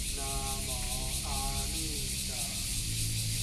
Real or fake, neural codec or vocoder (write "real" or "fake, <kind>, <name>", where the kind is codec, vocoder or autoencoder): real